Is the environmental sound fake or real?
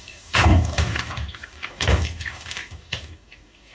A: fake